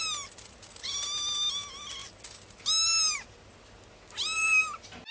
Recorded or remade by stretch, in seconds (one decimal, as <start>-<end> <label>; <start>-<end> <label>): 0.0-5.1 recorded